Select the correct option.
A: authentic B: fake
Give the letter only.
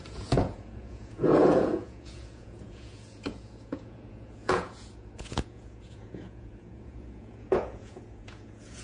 B